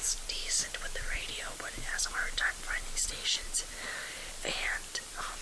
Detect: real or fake fake